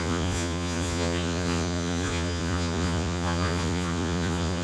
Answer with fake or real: fake